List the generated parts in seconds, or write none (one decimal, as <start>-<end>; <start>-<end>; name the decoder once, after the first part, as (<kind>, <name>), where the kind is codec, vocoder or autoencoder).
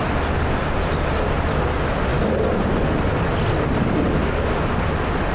none